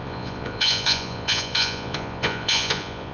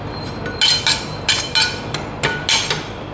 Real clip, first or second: second